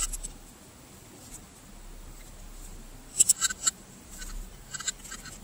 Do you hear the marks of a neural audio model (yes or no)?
no